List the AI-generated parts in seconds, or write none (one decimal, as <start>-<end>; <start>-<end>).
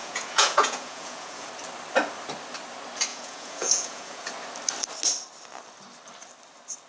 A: 0.0-1.5; 3.1-4.3